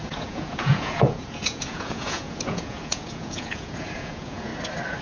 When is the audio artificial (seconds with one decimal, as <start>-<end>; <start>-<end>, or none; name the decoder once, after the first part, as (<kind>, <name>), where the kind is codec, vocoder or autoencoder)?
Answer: 0.0-4.5 (vocoder, Vocos)